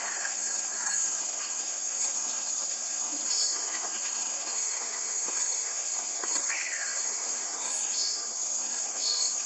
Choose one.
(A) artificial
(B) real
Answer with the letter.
A